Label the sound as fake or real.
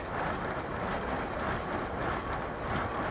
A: real